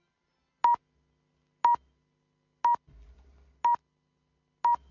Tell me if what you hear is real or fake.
real